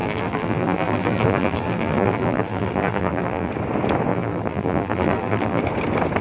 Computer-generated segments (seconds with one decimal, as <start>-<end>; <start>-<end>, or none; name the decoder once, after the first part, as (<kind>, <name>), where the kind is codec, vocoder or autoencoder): 0.0-3.5 (vocoder, BigVGAN v2); 4.1-5.6